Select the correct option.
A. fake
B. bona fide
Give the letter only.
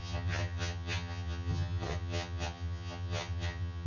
A